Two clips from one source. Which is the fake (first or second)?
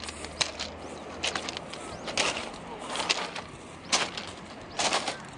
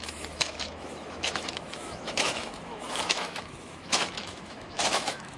second